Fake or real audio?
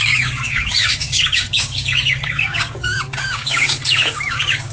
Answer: fake